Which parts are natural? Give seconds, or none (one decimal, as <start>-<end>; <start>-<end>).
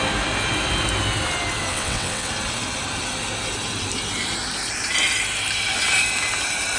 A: 0.0-1.7; 2.3-6.8